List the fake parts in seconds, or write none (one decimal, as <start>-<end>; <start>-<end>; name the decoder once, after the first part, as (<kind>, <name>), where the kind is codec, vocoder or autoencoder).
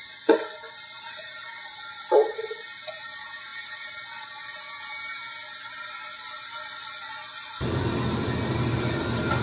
none